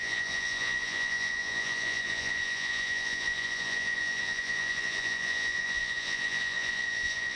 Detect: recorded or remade remade